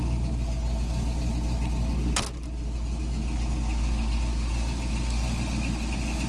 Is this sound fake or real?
real